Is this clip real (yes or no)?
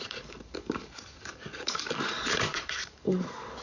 no